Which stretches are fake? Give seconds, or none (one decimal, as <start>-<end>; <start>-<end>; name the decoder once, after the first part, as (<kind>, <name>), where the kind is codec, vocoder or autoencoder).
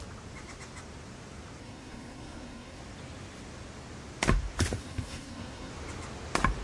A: 1.6-2.8 (codec, SNAC); 4.8-5.7